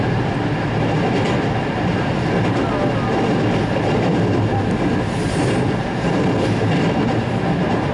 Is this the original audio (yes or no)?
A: yes